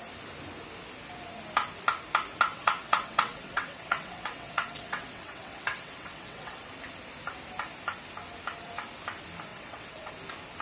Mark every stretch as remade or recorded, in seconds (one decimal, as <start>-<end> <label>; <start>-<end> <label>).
0.0-2.5 recorded; 2.5-6.7 remade; 6.7-9.5 recorded; 9.5-10.1 remade; 10.1-10.6 recorded